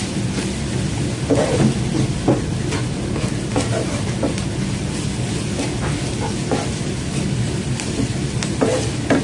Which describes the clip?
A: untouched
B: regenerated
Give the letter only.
A